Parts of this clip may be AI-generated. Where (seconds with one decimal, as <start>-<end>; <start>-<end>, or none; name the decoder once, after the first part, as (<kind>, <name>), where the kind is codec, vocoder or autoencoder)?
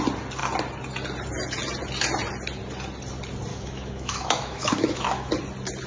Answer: 3.5-5.3 (autoencoder, DAC-VAE)